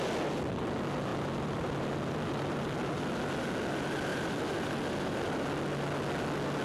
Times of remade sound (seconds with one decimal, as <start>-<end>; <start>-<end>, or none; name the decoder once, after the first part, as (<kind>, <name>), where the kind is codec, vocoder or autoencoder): 1.1-3.0 (vocoder, BigVGAN v2); 4.1-4.7